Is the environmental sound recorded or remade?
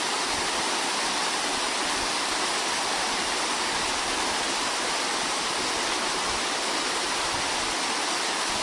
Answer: recorded